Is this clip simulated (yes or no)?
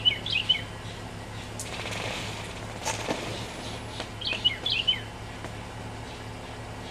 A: no